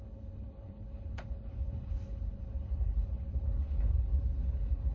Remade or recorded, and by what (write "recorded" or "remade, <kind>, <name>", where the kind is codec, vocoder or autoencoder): remade, codec, HILCodec